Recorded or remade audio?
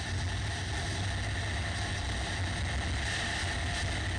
recorded